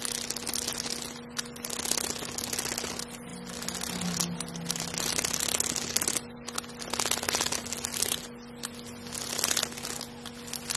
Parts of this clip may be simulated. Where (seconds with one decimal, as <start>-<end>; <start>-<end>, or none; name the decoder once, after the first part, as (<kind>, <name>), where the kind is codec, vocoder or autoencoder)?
none

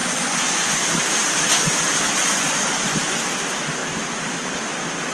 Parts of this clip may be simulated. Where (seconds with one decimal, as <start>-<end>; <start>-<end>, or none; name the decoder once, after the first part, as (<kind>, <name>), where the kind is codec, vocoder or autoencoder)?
0.0-0.9 (vocoder, Vocos); 2.2-3.0

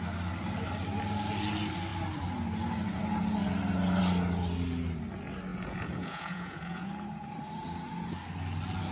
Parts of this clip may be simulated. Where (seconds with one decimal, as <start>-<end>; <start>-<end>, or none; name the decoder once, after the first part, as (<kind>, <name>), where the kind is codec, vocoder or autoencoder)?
5.5-6.9 (vocoder, Vocos)

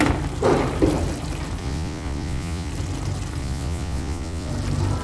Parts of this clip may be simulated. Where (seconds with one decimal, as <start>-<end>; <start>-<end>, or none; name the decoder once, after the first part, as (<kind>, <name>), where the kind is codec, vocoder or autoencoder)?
1.6-2.7 (vocoder, Vocos); 3.4-4.5

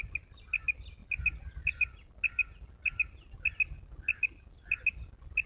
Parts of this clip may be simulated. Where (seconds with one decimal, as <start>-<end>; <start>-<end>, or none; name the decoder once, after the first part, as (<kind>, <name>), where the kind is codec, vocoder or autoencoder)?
none

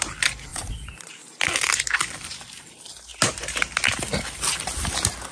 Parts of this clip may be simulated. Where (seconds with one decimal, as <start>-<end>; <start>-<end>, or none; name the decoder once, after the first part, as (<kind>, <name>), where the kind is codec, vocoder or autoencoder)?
0.5-1.1 (vocoder, Vocos)

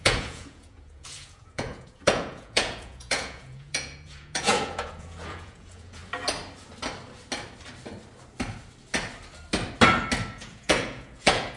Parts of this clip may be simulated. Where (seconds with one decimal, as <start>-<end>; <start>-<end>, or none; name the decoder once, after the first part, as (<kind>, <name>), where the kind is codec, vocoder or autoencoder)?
0.0-6.0 (vocoder, Vocos); 10.3-11.6